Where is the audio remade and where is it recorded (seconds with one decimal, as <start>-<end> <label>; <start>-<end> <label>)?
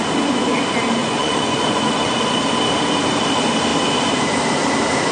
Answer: 0.0-1.0 recorded; 1.0-2.1 remade; 2.1-5.1 recorded